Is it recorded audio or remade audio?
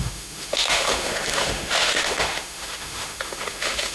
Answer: remade